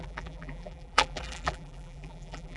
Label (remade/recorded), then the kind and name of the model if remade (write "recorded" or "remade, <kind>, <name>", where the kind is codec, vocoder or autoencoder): remade, vocoder, BigVGAN v2